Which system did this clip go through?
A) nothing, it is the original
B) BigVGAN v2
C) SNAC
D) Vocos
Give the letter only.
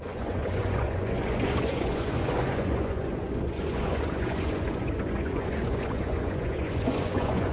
D